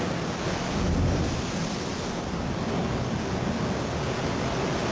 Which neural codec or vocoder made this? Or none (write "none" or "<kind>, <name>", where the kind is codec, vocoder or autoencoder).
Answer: none